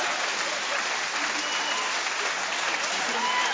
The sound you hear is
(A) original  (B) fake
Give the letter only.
A